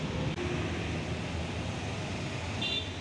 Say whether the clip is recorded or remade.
recorded